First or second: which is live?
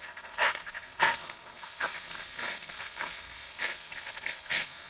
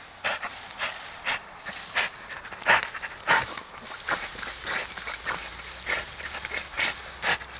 second